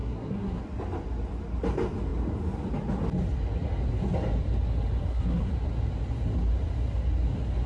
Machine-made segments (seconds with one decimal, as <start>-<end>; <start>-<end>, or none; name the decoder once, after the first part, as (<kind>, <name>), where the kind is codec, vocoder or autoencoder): 0.0-0.6 (codec, SNAC); 5.0-5.5